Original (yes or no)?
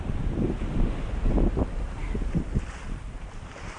yes